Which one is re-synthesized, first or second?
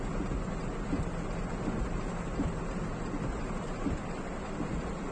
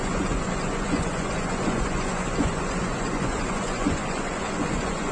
second